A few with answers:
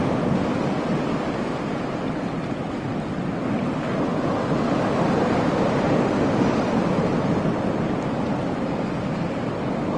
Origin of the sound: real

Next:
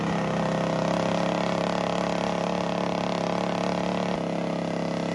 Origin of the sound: real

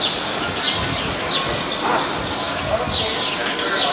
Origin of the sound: real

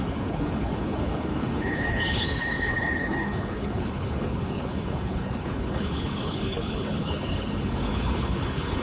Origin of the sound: fake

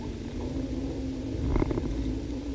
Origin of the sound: real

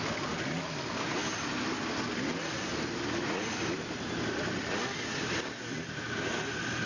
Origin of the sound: real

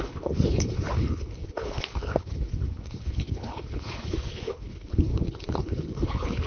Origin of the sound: fake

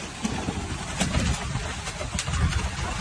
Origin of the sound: real